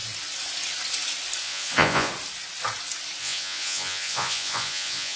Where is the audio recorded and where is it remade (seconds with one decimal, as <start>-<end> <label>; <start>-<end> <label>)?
0.0-1.4 recorded; 1.4-2.1 remade; 2.1-3.2 recorded; 3.2-5.2 remade